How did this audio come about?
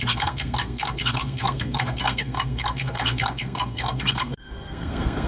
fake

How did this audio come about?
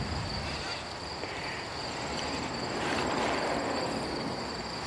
real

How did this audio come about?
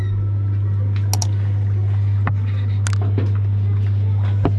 real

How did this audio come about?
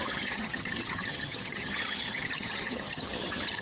fake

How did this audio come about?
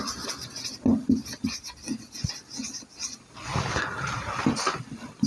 real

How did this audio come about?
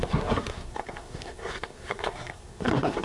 fake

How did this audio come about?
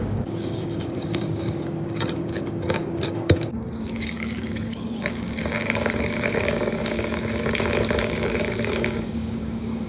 fake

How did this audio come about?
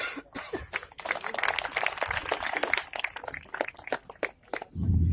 real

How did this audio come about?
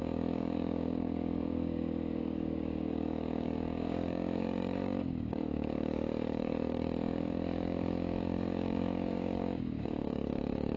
fake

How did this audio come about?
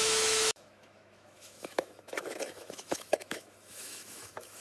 fake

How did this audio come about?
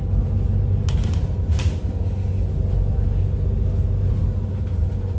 real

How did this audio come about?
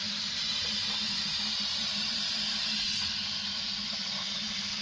fake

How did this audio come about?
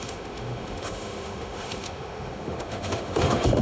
fake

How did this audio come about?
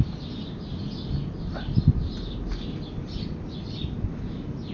real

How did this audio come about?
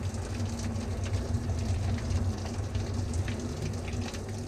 real